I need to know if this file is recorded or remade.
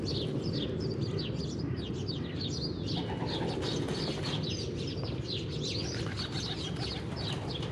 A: recorded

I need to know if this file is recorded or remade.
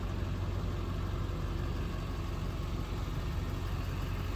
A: recorded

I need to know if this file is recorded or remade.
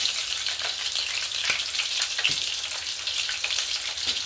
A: recorded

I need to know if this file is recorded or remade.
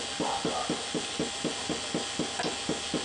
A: recorded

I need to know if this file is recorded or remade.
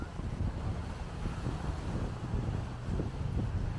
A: recorded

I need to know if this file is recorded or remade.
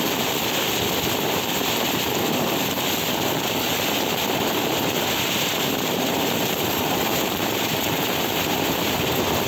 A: remade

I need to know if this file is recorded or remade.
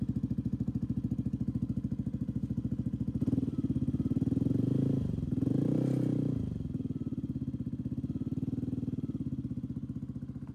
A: recorded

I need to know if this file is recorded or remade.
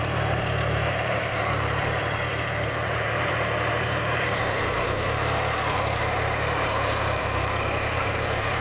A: remade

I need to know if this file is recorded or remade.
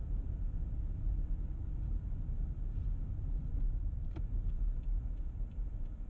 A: remade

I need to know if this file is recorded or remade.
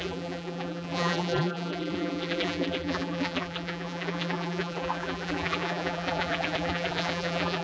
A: remade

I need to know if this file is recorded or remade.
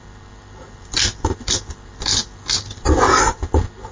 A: recorded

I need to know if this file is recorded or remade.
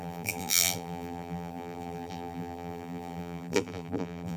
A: remade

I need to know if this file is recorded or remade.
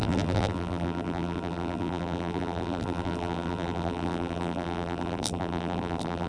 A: remade